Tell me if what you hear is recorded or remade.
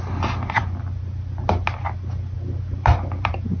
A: recorded